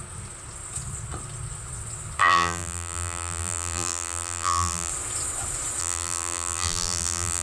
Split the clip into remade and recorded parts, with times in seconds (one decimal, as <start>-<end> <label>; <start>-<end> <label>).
0.0-2.2 recorded; 2.2-4.9 remade; 4.9-5.8 recorded; 5.8-7.4 remade